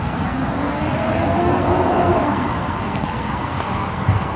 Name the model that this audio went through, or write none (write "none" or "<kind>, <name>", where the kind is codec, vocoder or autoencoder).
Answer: codec, SNAC